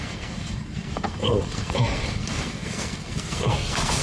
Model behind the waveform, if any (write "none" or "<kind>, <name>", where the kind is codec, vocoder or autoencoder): codec, SNAC